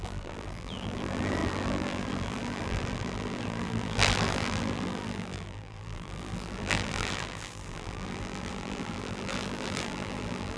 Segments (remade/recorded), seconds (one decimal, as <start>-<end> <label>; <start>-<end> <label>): 0.0-10.6 remade

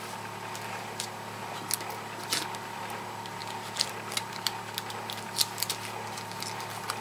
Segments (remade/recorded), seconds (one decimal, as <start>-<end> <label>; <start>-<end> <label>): 0.0-7.0 recorded

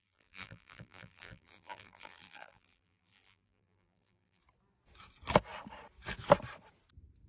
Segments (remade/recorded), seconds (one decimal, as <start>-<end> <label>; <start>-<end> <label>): 0.0-4.4 remade; 4.4-7.3 recorded